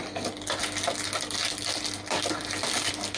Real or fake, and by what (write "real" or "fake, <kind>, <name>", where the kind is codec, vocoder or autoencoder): real